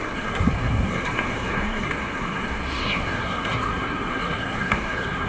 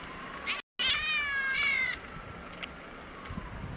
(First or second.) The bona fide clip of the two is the second